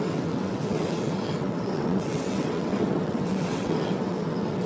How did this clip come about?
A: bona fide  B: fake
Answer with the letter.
B